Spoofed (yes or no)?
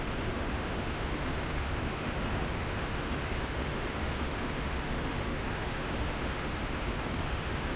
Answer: yes